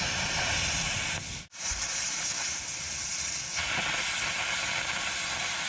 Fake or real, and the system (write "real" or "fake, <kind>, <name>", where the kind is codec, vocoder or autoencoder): real